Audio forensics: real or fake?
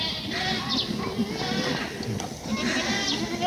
real